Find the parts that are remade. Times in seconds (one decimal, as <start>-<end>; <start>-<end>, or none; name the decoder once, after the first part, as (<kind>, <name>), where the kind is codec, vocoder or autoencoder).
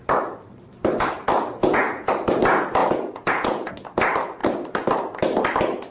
1.6-2.1 (vocoder, Vocos); 2.8-3.7